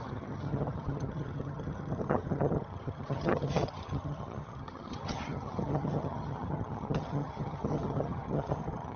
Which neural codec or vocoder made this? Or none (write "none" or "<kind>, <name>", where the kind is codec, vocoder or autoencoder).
vocoder, HiFi-GAN